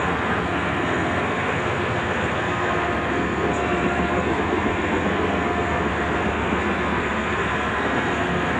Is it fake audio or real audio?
fake